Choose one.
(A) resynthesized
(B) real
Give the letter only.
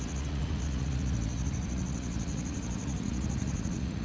A